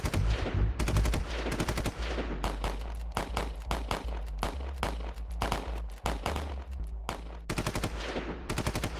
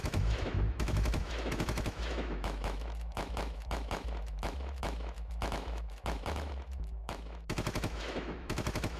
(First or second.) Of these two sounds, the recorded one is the first